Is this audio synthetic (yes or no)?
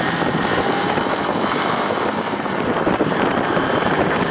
yes